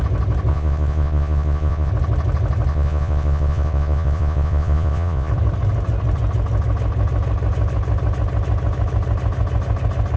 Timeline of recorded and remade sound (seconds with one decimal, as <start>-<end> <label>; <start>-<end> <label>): 0.0-0.5 recorded; 0.5-1.9 remade; 1.9-2.7 recorded; 2.7-5.3 remade; 5.3-10.2 recorded

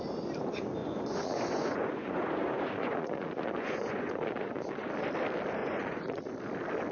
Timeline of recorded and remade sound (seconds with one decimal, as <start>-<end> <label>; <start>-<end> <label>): 0.0-0.8 recorded; 0.8-4.9 remade; 4.9-5.6 recorded; 5.6-6.2 remade; 6.2-6.9 recorded